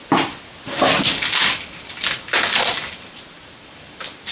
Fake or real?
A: fake